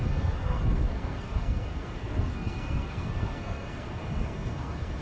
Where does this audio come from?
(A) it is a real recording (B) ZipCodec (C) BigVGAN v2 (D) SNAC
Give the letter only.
D